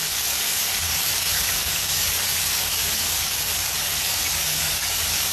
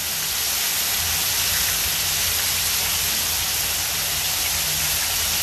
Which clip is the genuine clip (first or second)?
second